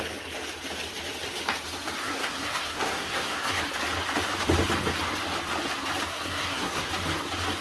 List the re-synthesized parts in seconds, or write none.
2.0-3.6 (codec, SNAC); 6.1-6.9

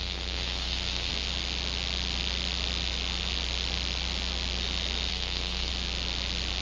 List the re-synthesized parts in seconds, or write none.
0.0-1.1 (codec, SNAC); 5.1-5.7

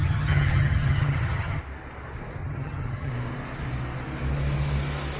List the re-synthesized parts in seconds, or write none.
0.0-1.6 (vocoder, HiFi-GAN); 2.4-3.1